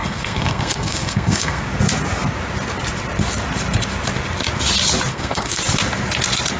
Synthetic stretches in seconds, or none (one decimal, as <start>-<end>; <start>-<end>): 0.0-1.6; 5.1-5.6